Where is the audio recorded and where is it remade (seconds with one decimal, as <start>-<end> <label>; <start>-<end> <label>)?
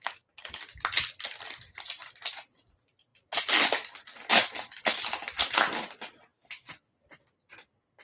0.0-8.0 recorded